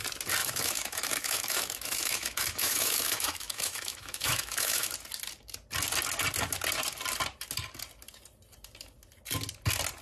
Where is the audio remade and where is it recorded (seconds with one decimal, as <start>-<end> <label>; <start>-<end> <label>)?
0.0-0.4 recorded; 0.4-4.9 remade; 4.9-10.0 recorded